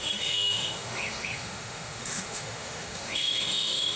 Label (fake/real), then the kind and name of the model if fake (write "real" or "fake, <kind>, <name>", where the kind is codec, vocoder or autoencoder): fake, autoencoder, DAC-VAE